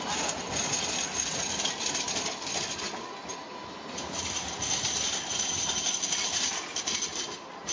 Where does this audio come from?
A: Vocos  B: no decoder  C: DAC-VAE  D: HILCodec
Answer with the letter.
B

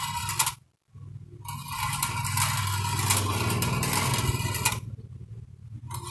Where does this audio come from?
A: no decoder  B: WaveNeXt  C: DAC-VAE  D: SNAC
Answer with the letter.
A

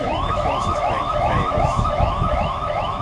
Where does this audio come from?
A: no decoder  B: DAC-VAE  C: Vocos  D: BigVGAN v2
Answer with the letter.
B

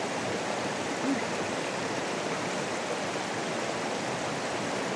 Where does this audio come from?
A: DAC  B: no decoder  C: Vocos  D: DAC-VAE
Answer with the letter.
B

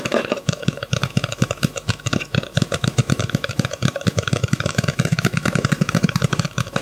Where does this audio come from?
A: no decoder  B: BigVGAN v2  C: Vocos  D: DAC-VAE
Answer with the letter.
D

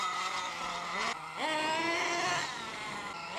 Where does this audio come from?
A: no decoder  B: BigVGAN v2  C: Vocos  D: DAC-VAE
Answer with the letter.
A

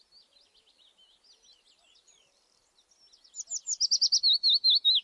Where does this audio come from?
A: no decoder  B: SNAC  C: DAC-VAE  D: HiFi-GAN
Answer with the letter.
A